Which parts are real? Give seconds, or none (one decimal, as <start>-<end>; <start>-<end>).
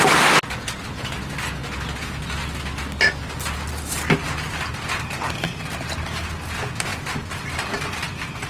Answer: 0.0-6.9; 7.7-8.5